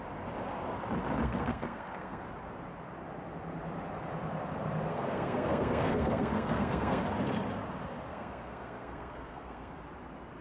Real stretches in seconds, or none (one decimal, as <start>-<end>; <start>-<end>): 0.0-1.2; 2.2-4.9; 7.0-8.1; 9.7-10.4